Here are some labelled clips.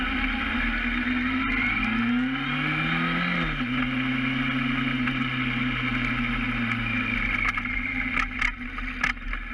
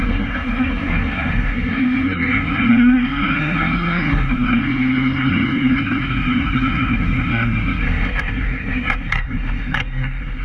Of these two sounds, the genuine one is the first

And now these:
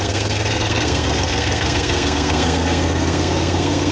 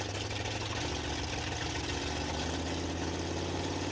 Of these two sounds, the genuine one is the second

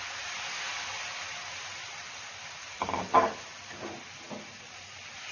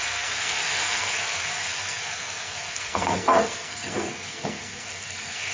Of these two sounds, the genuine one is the first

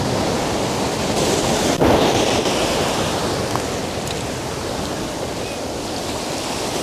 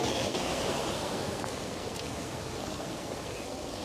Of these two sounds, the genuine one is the first